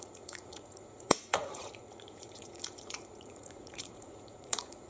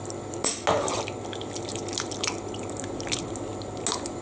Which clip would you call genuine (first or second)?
second